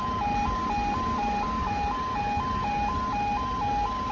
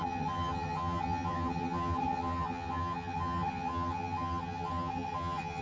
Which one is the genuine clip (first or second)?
first